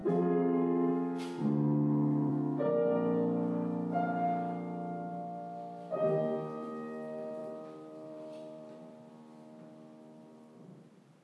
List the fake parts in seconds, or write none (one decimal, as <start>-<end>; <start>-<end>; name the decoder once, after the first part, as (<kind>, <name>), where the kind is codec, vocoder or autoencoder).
0.0-0.9 (vocoder, BigVGAN v2); 7.4-9.1